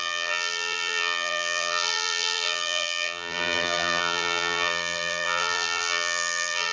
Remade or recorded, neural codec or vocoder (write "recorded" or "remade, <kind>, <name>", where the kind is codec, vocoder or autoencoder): remade, vocoder, BigVGAN v2